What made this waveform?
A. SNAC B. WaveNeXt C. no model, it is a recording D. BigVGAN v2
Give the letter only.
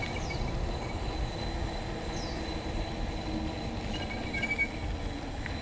C